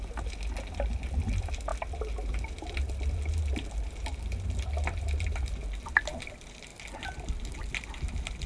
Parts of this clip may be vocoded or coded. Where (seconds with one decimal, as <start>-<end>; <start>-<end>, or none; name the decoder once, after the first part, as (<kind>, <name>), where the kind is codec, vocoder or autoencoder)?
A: none